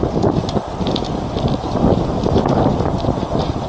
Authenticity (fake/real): real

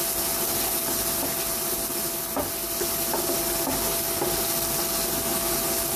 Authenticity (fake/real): real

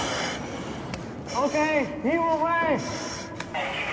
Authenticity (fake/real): real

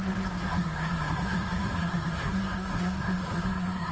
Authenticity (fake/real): fake